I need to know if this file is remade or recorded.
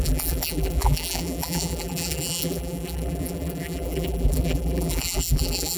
remade